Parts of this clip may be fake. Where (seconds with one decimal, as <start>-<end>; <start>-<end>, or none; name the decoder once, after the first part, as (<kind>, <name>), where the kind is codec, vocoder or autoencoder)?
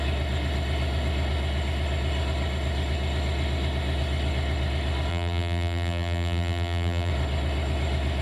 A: 5.1-7.1 (vocoder, BigVGAN v2)